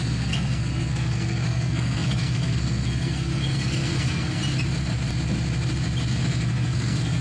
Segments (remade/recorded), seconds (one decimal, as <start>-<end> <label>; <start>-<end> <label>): 0.0-4.4 remade; 4.4-6.1 recorded; 6.1-7.2 remade